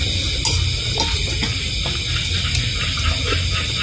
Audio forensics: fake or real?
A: real